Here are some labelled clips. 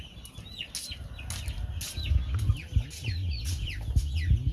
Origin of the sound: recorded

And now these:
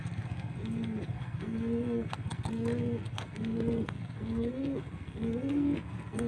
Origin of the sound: remade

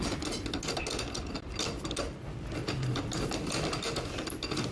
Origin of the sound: recorded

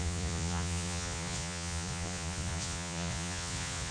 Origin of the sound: remade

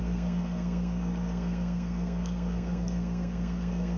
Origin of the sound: remade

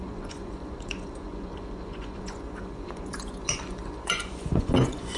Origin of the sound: remade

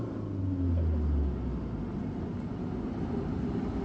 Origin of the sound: recorded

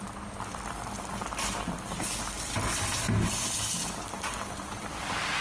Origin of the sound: recorded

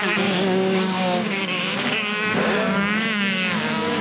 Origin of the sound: remade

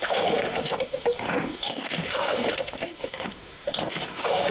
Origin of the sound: remade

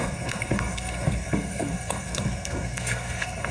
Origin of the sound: remade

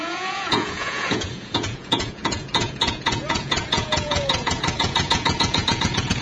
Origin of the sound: remade